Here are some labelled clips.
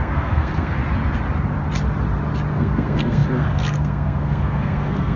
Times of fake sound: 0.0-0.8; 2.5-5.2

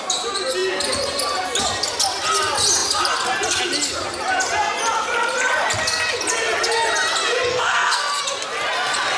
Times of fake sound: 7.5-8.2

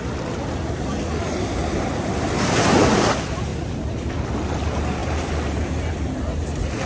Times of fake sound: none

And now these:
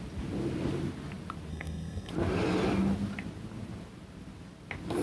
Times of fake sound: 1.5-2.1

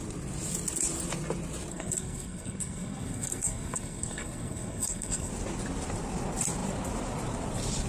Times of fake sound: 1.7-5.3

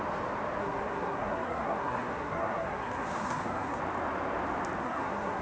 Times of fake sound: 0.6-3.8; 4.8-5.4